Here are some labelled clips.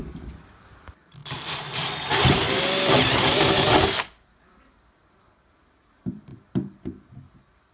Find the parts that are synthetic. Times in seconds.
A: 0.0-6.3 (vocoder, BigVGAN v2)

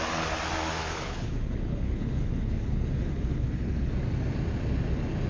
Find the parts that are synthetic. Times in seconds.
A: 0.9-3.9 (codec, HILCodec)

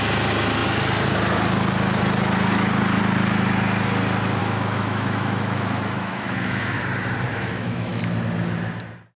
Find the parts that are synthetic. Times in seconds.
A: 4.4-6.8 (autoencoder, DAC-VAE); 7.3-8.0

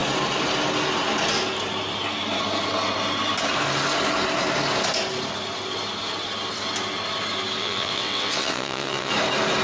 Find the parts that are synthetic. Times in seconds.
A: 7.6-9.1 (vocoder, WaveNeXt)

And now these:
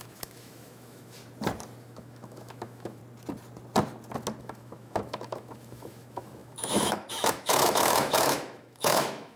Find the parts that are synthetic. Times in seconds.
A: 0.0-1.2 (autoencoder, DAC-VAE); 1.8-3.0; 4.4-9.4

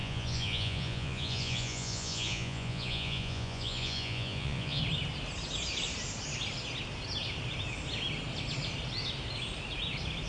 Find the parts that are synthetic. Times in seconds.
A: 0.0-4.8 (vocoder, Vocos)

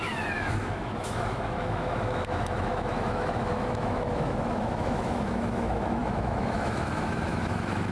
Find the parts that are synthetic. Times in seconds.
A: 0.0-7.9 (autoencoder, DAC-VAE)

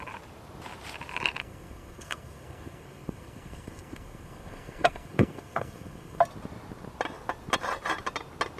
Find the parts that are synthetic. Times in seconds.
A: 1.4-6.2 (codec, SNAC)